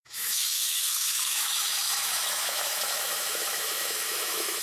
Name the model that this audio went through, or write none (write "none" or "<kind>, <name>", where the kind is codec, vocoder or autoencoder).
autoencoder, DAC-VAE